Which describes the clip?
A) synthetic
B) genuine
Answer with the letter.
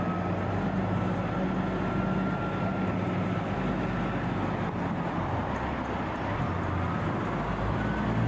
B